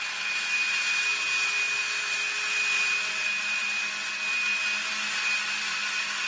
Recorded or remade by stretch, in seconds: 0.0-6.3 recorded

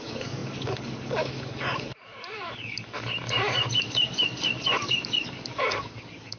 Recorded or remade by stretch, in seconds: 0.0-6.4 remade

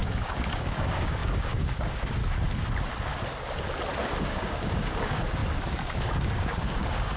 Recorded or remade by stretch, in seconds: 0.0-2.2 remade; 2.2-4.2 recorded; 4.2-7.2 remade